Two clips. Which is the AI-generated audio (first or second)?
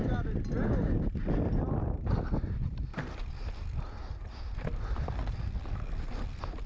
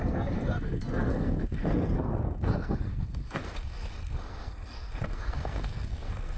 second